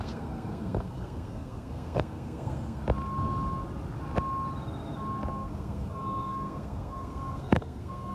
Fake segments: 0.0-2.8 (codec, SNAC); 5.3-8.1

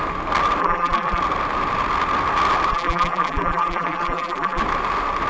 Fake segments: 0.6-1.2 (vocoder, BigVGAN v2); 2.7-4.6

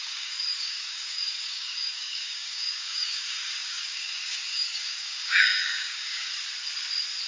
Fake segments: 0.0-6.3 (codec, DAC)

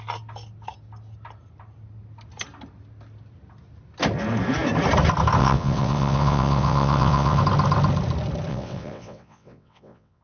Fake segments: 5.4-7.4 (vocoder, WaveNeXt); 8.5-10.2

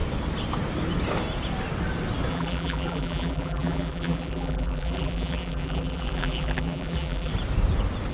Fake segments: 2.3-7.3 (vocoder, BigVGAN v2)